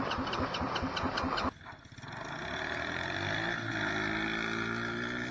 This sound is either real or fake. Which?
real